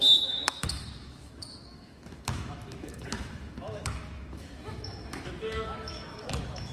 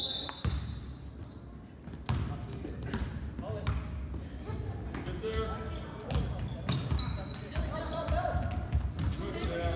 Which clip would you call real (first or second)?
second